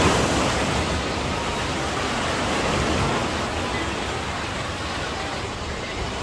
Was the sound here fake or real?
real